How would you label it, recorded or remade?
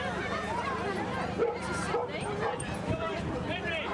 remade